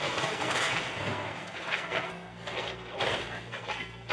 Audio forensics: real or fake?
fake